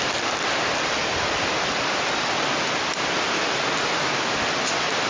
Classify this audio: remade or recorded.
recorded